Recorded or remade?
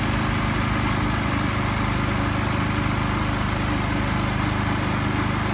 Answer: recorded